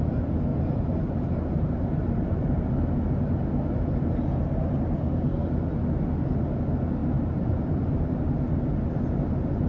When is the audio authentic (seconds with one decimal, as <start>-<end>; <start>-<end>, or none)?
0.0-0.5; 2.9-7.0; 8.7-9.7